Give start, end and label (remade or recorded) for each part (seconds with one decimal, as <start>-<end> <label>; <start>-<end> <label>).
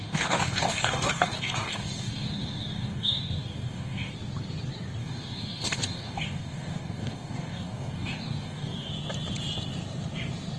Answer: 0.0-4.1 remade; 4.1-5.0 recorded; 5.0-8.9 remade; 8.9-10.6 recorded